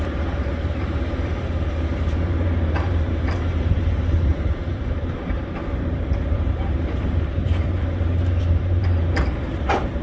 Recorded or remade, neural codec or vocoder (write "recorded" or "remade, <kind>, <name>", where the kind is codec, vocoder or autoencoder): remade, vocoder, BigVGAN v2